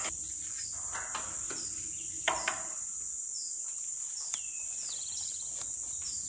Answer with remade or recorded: recorded